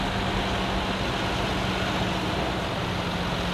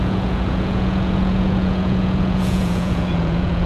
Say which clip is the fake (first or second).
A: second